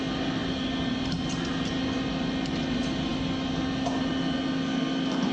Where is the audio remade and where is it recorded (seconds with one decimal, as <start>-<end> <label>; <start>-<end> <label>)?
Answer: 0.0-5.3 recorded